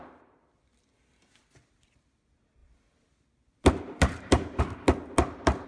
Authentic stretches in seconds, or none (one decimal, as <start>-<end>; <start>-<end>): 0.0-5.7